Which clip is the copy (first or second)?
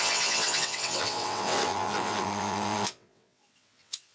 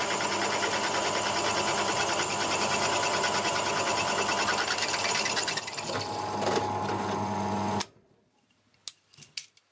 first